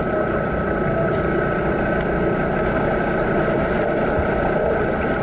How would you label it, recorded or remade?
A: recorded